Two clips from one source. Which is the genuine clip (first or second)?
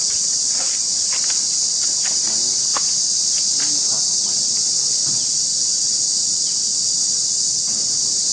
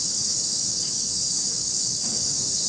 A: first